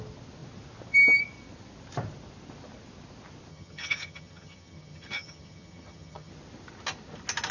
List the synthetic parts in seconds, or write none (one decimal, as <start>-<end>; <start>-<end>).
3.5-6.3